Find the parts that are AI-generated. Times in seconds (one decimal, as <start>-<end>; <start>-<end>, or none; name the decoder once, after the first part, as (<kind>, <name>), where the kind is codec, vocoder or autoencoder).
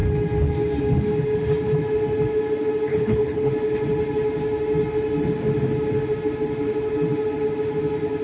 2.9-3.5 (codec, HILCodec)